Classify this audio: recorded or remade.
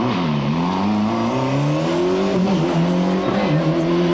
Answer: recorded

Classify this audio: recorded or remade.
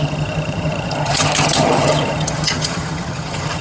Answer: remade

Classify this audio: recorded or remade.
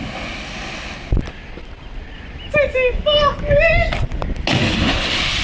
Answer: recorded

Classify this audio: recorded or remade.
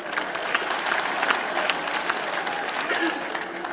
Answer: recorded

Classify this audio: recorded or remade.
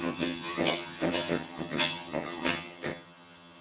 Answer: remade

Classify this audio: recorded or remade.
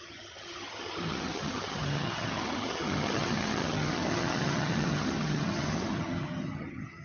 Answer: remade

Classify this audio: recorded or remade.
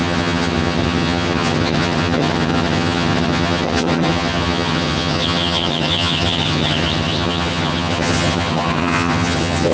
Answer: remade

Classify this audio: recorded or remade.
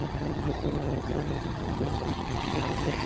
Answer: remade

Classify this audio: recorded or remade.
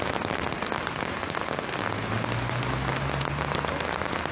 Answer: recorded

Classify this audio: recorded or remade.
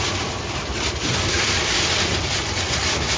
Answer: recorded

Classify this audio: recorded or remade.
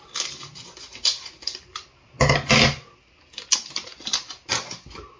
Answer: recorded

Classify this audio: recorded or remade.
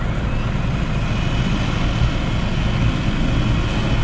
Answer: recorded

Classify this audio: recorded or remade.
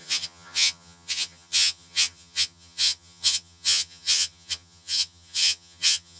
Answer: remade